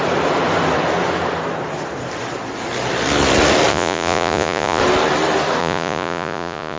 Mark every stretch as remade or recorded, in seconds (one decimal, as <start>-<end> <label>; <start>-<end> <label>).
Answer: 0.0-3.7 recorded; 3.7-4.8 remade; 4.8-5.6 recorded; 5.6-6.8 remade